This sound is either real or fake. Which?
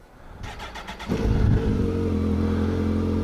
real